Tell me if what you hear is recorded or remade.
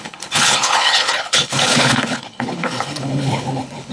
remade